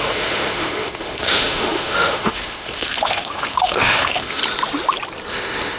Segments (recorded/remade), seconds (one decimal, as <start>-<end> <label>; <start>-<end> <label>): 0.0-4.4 remade; 4.4-5.3 recorded; 5.3-5.8 remade